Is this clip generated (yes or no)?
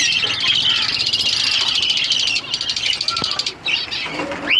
no